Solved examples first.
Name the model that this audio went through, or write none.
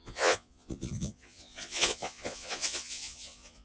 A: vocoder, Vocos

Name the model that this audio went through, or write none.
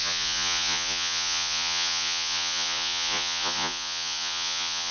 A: vocoder, Vocos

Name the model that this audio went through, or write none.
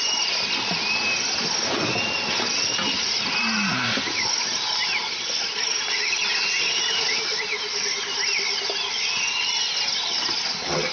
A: none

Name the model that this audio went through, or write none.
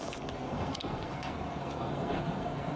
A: codec, SNAC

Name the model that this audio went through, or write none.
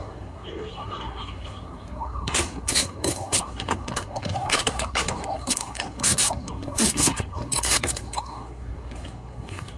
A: codec, SNAC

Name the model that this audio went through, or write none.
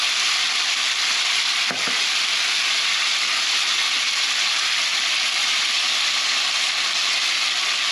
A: none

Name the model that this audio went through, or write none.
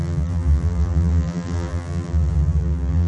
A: vocoder, BigVGAN v2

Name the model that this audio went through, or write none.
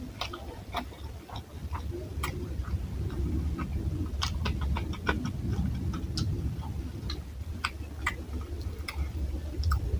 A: none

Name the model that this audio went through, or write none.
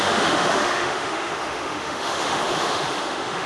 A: autoencoder, DAC-VAE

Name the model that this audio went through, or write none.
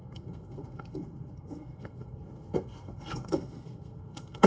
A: codec, SNAC